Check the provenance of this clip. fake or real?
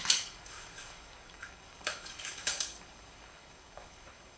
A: fake